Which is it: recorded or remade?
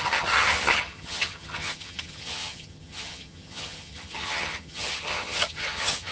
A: remade